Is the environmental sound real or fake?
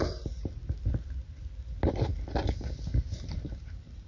real